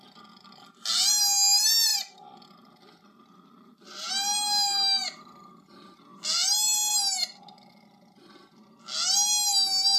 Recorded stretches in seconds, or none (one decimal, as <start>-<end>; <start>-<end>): 0.0-1.9; 4.1-5.0; 5.5-10.0